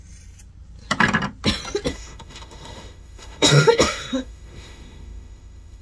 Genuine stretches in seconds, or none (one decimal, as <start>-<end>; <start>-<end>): 0.0-1.9